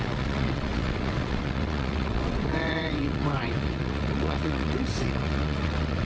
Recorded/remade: remade